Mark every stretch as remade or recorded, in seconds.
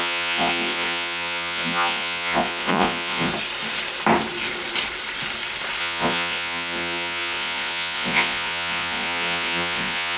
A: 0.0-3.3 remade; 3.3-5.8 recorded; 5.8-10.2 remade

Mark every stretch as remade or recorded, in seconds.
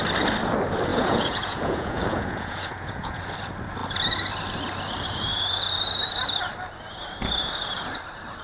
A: 0.0-0.9 recorded; 0.9-3.2 remade; 3.2-8.4 recorded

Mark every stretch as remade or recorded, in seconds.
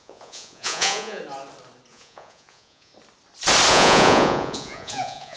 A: 0.0-1.2 remade; 1.2-1.9 recorded; 1.9-2.9 remade; 2.9-3.7 recorded; 3.7-5.4 remade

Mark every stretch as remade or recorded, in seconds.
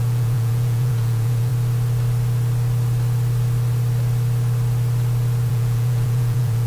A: 0.0-1.5 remade; 1.5-5.5 recorded; 5.5-6.7 remade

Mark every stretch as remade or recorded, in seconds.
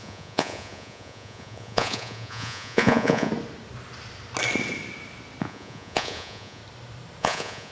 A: 0.0-3.3 remade; 3.3-5.4 recorded; 5.4-6.6 remade; 6.6-7.2 recorded; 7.2-7.7 remade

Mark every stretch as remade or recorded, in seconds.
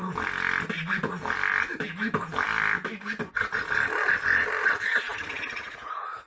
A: 0.0-5.1 recorded; 5.1-6.3 remade